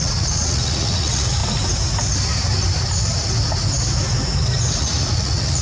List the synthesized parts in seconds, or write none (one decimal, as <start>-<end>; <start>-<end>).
0.0-1.4; 4.7-5.6